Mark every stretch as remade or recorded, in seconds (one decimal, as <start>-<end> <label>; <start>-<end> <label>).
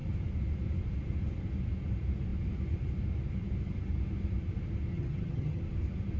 0.0-4.9 recorded; 4.9-5.6 remade; 5.6-6.2 recorded